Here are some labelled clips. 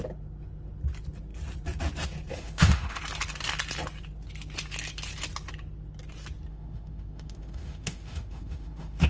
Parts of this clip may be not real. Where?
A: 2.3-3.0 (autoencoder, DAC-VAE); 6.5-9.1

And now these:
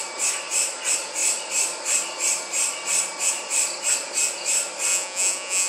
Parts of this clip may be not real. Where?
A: 4.9-5.7 (vocoder, Vocos)

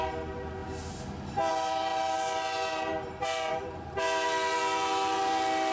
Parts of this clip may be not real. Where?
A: 0.0-0.6 (vocoder, BigVGAN v2); 1.5-5.7

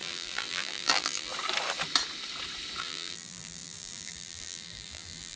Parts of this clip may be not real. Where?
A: 0.0-1.3 (vocoder, BigVGAN v2); 2.8-5.4

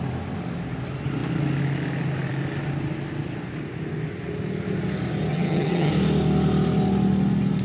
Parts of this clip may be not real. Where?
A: 5.3-5.9 (vocoder, HiFi-GAN)

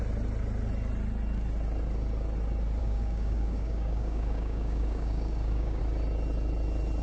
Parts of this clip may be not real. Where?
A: 2.8-5.8 (codec, DAC)

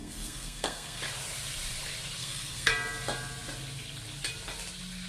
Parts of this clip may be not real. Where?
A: 0.0-1.0 (codec, SNAC); 2.2-2.7